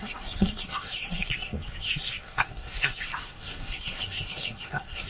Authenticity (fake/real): fake